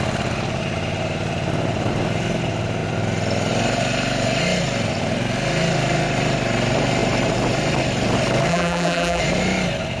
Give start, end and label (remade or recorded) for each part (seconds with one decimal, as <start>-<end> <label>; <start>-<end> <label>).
0.0-8.5 recorded; 8.5-9.2 remade; 9.2-10.0 recorded